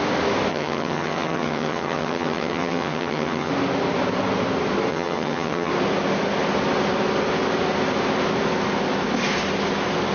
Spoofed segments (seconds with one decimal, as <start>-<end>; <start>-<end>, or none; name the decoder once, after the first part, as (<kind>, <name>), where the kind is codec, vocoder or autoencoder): 0.5-3.5 (vocoder, HiFi-GAN); 4.9-5.7